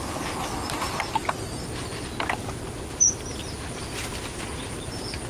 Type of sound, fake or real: real